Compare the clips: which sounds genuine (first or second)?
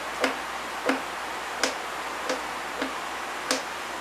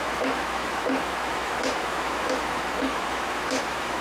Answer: first